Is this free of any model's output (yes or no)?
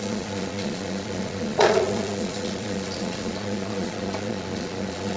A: no